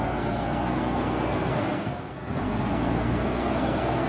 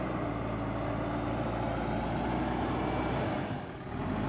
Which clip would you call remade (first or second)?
first